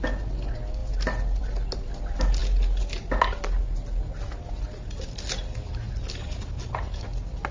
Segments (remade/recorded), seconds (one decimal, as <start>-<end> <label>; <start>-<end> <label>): 0.0-7.5 recorded